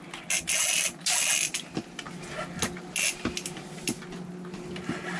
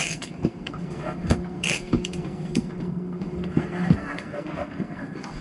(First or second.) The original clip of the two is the first